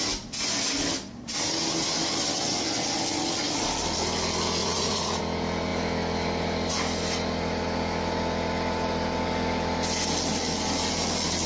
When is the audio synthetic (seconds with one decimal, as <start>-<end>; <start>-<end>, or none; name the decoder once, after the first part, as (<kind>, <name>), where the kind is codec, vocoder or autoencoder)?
4.6-5.2 (vocoder, Vocos)